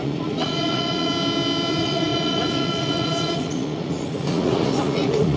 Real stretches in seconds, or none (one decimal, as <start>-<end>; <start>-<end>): 1.1-1.7